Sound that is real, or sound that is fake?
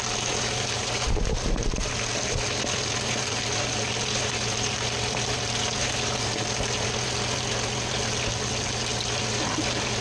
real